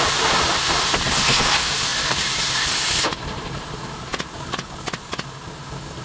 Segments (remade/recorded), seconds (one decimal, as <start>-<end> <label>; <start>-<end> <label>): 0.0-6.0 recorded

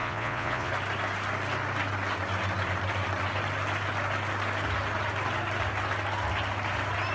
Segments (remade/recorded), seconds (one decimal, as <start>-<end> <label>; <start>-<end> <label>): 0.0-0.7 remade; 0.7-7.1 recorded

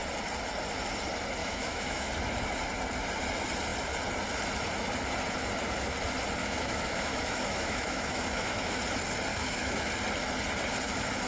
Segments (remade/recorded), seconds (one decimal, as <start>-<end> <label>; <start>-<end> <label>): 0.0-1.4 recorded; 1.4-2.1 remade; 2.1-6.4 recorded; 6.4-8.8 remade; 8.8-9.3 recorded; 9.3-9.9 remade; 9.9-11.3 recorded

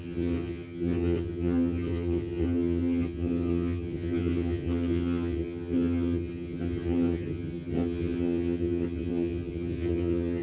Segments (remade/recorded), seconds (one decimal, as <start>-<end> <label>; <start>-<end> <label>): 0.0-10.4 remade

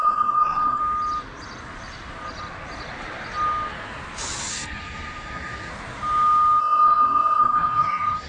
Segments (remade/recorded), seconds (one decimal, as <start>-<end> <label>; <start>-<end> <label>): 0.0-0.8 remade; 0.8-4.5 recorded; 4.5-5.7 remade; 5.7-6.6 recorded; 6.6-8.3 remade